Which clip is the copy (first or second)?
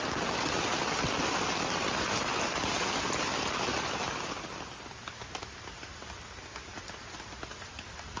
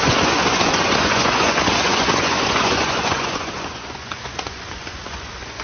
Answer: second